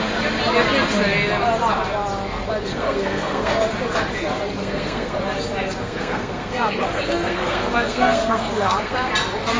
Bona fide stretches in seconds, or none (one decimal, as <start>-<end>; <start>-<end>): 0.0-2.7; 3.5-4.6; 5.2-5.8; 9.1-9.6